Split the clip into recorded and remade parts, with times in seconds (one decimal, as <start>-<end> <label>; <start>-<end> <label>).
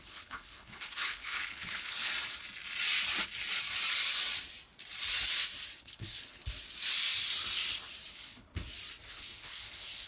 0.0-2.1 remade; 2.1-5.8 recorded; 5.8-6.4 remade; 6.4-8.1 recorded; 8.1-8.6 remade; 8.6-9.1 recorded; 9.1-10.1 remade